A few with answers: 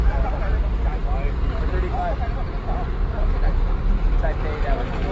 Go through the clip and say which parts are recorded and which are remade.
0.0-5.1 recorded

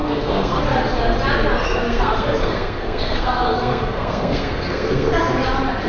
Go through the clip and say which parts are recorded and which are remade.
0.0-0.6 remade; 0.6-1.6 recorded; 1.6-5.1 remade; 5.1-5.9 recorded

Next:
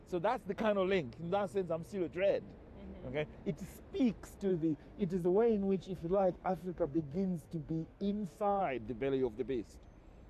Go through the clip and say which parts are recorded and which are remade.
0.0-4.5 recorded; 4.5-8.6 remade; 8.6-10.3 recorded

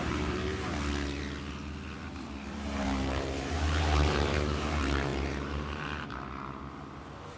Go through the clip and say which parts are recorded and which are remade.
0.0-0.4 remade; 0.4-2.5 recorded; 2.5-7.4 remade

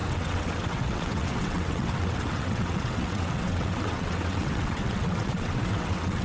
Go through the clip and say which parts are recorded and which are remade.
0.0-6.2 remade

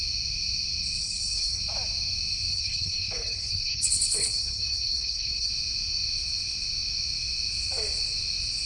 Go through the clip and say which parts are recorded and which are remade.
0.0-1.0 recorded; 1.0-1.6 remade; 1.6-2.5 recorded; 2.5-5.5 remade; 5.5-8.7 recorded

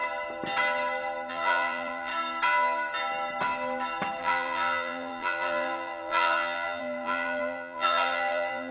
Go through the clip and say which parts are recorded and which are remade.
0.0-1.3 recorded; 1.3-2.1 remade; 2.1-4.2 recorded; 4.2-8.7 remade